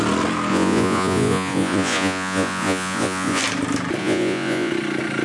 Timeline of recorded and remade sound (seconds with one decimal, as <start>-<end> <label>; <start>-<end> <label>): 0.0-0.5 recorded; 0.5-3.4 remade; 3.4-4.0 recorded; 4.0-4.7 remade; 4.7-5.2 recorded